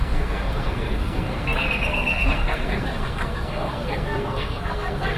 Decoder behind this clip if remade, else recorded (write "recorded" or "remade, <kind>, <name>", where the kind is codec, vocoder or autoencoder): remade, codec, SNAC